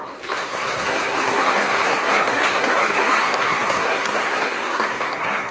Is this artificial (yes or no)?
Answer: yes